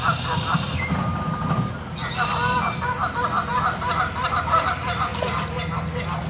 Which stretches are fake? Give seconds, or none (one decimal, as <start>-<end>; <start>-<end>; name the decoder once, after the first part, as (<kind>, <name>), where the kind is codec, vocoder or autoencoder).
none